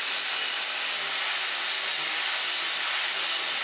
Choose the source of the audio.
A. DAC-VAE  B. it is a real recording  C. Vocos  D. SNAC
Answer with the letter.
B